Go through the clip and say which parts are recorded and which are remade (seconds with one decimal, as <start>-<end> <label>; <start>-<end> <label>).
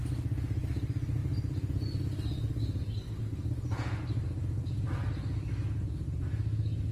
0.0-6.9 recorded